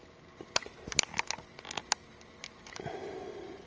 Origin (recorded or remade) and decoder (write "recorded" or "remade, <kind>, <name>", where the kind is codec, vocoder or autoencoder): recorded